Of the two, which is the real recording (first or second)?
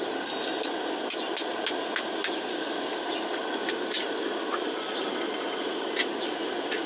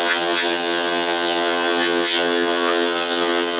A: first